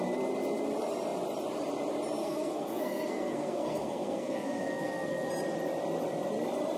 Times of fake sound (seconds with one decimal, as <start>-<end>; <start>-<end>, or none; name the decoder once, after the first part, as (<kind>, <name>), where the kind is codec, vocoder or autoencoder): 2.2-5.3 (codec, SNAC)

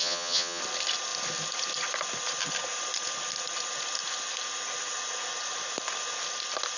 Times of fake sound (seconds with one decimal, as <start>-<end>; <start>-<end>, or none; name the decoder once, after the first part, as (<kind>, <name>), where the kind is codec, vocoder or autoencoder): 0.0-0.6 (vocoder, HiFi-GAN)

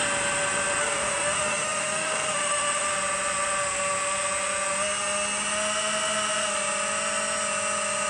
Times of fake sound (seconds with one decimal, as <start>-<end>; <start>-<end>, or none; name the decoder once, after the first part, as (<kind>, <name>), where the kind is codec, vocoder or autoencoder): 0.8-2.9 (autoencoder, DAC-VAE)

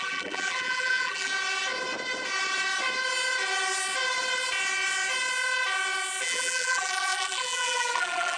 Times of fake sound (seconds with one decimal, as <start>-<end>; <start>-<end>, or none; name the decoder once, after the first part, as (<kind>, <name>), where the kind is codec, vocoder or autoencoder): 0.0-1.3 (vocoder, BigVGAN v2); 6.2-8.4

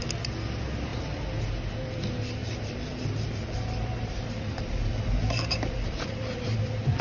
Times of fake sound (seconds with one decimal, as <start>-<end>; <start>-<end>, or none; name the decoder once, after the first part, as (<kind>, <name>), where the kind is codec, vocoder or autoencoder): 2.4-6.6 (vocoder, BigVGAN v2)